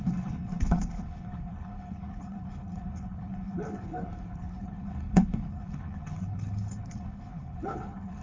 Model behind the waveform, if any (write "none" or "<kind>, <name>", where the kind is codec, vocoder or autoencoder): codec, HILCodec